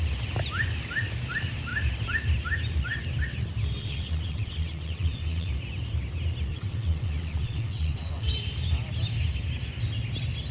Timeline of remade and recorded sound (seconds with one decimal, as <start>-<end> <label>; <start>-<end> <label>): 0.0-3.8 recorded; 3.8-5.5 remade; 5.5-6.5 recorded; 6.5-8.3 remade; 8.3-10.5 recorded